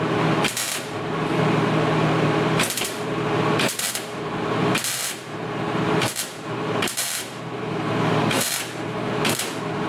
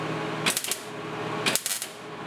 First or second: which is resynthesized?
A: first